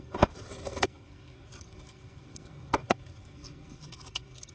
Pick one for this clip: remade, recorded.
remade